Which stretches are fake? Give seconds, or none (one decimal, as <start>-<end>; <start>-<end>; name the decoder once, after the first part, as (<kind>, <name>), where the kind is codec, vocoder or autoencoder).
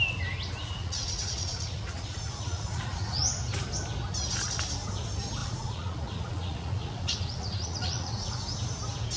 0.8-3.2 (vocoder, Vocos); 5.4-8.3